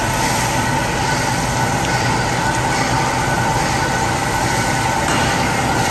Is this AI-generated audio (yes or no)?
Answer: no